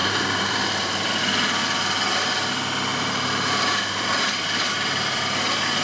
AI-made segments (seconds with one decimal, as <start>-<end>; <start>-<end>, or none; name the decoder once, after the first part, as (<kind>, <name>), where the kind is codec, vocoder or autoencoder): 0.0-1.2 (vocoder, BigVGAN v2); 2.9-5.2